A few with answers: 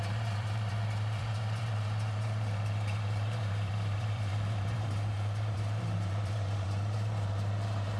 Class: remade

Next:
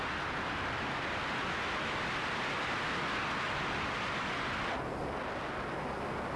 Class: recorded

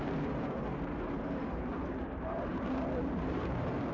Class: remade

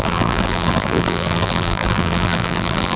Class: remade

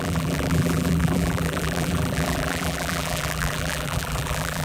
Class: remade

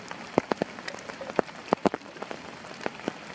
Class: remade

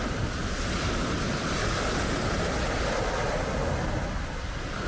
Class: recorded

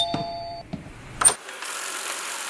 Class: remade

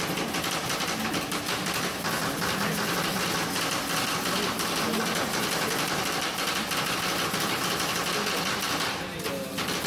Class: recorded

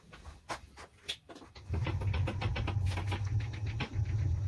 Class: recorded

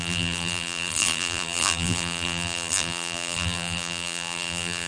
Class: remade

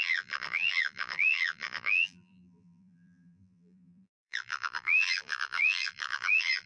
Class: remade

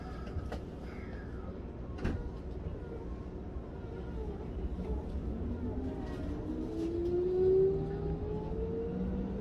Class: recorded